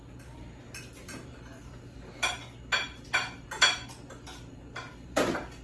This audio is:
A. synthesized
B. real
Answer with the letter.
B